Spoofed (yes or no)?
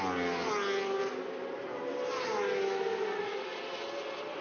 no